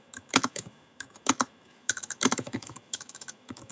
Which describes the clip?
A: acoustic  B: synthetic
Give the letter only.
B